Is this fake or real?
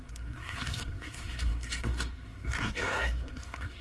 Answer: fake